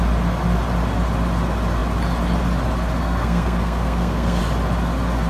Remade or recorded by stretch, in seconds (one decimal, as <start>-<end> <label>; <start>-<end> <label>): 0.0-3.0 recorded; 3.0-4.4 remade; 4.4-5.3 recorded